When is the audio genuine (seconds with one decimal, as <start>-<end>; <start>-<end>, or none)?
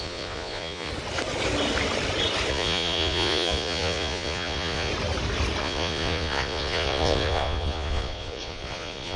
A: 0.9-2.5; 4.9-5.6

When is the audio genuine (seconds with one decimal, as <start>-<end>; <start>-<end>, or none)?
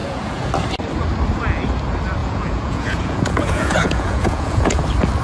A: 0.5-2.2; 4.8-5.2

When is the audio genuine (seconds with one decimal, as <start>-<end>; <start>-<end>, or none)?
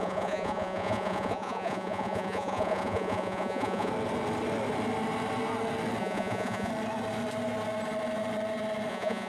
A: 3.9-6.0; 6.7-8.9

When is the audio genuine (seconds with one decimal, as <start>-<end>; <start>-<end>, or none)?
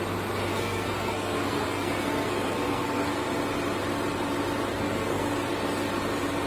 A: 0.0-0.5; 3.3-4.7; 5.3-6.5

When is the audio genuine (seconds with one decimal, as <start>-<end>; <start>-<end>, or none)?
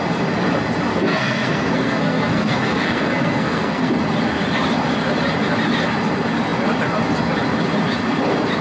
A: 0.0-0.9; 3.9-8.6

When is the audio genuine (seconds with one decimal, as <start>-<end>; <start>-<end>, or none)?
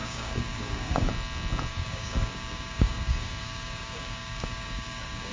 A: 1.1-1.7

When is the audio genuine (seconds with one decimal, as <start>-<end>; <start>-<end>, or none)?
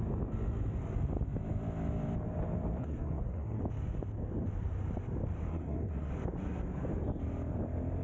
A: 0.0-2.8; 3.6-5.5; 6.1-8.0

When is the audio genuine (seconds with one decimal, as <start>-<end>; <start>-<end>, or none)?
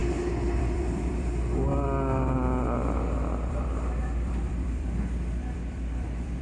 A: 0.0-0.6; 1.7-3.5